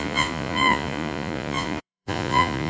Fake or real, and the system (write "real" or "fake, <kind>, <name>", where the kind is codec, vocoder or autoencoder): fake, vocoder, Vocos